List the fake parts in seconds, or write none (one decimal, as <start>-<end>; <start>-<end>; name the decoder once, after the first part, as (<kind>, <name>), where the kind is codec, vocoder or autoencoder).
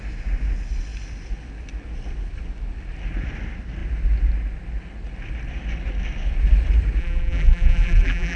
7.0-8.4 (vocoder, BigVGAN v2)